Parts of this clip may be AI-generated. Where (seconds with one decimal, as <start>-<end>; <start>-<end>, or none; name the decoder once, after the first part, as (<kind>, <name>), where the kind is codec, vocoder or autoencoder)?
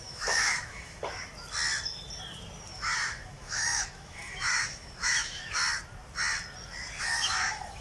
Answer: 0.0-1.0 (autoencoder, DAC-VAE); 2.7-5.6; 7.0-7.8